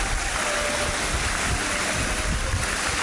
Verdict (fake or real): real